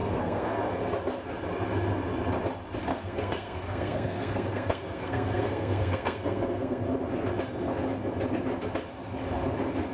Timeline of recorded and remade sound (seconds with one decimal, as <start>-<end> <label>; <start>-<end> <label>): 0.0-0.6 remade; 0.6-2.9 recorded; 2.9-6.8 remade; 6.8-9.9 recorded